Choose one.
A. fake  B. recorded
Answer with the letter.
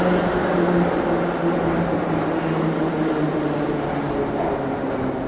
B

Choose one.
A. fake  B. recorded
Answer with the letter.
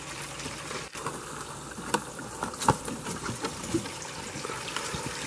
B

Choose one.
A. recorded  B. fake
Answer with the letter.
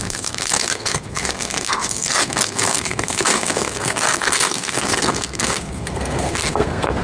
B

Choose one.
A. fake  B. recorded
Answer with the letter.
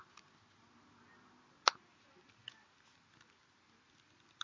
B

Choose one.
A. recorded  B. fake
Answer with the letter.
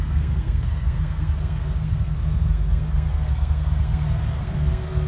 B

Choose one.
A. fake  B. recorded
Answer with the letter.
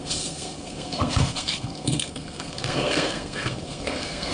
A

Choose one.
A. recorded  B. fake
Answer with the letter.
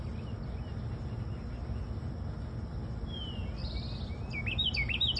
A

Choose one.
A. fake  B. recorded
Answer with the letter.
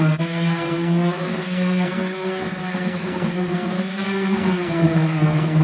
A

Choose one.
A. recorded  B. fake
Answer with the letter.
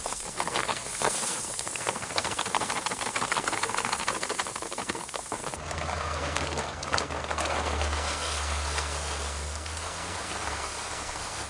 B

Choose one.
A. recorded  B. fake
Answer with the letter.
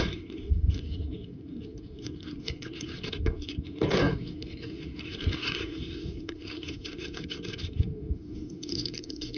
B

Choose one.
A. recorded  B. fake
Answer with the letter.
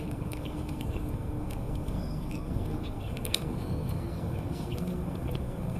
B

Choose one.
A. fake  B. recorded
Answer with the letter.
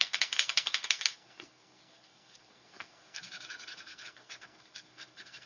A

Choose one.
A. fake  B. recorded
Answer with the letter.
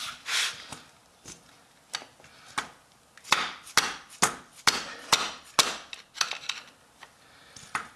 B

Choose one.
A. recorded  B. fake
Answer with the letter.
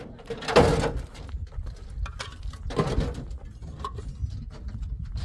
A